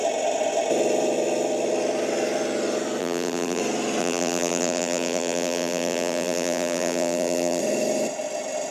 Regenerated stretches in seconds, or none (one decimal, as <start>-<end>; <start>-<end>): 3.0-3.6; 4.0-7.6